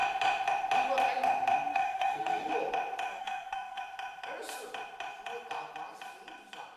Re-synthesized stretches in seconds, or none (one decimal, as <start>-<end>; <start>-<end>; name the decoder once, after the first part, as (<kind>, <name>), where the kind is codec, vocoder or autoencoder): 1.7-2.5 (codec, SNAC); 3.1-3.8